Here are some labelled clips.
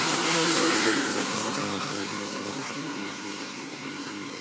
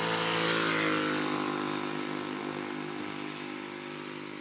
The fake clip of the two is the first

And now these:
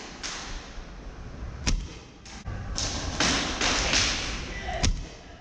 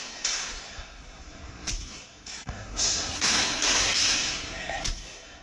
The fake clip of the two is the second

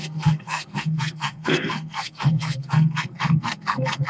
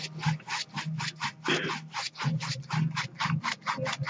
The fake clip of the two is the first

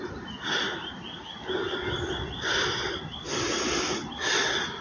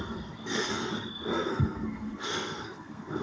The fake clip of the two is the second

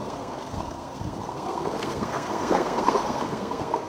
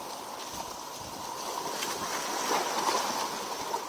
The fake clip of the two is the first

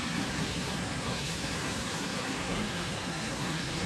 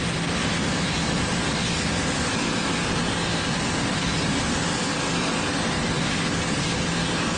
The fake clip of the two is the first